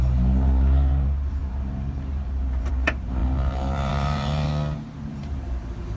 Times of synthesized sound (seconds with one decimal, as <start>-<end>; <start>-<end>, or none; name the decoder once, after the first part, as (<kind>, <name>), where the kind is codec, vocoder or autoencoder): 0.0-4.5 (vocoder, BigVGAN v2); 5.1-6.0